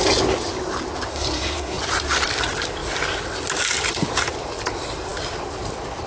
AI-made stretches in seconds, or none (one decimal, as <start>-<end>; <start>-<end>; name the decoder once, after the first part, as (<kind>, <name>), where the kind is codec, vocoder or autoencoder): 1.1-1.8 (codec, SNAC)